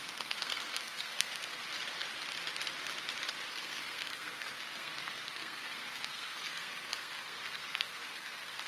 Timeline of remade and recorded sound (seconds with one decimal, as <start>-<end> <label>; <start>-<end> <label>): 0.0-1.6 remade; 1.6-3.5 recorded; 3.5-8.7 remade